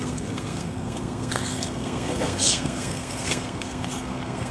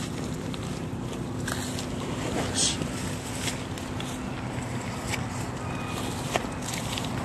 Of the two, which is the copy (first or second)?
first